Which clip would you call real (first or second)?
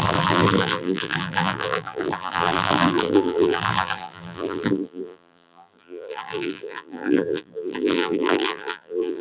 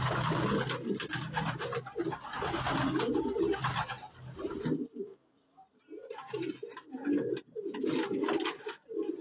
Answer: second